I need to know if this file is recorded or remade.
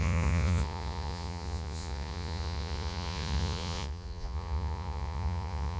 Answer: remade